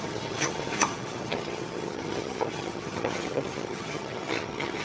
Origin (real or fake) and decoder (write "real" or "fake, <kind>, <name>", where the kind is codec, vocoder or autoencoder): fake, vocoder, HiFi-GAN